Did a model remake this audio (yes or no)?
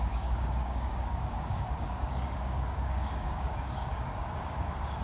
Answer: yes